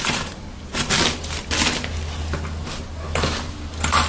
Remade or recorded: recorded